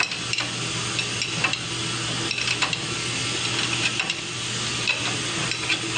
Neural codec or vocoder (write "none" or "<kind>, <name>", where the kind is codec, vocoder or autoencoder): none